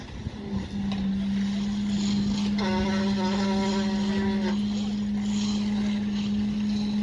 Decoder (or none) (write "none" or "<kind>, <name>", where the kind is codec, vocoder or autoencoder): none